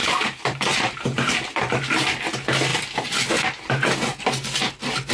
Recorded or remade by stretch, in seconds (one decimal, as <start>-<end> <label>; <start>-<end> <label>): 0.0-1.7 remade; 1.7-5.1 recorded